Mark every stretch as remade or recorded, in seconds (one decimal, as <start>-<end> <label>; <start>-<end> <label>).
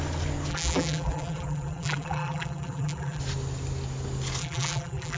0.0-0.5 recorded; 0.5-3.2 remade; 3.2-4.4 recorded; 4.4-5.2 remade